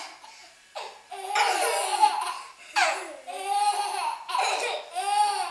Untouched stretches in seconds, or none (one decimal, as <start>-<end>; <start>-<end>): 0.0-5.5